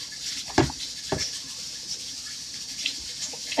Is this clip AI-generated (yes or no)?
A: no